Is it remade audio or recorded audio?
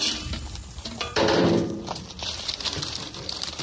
remade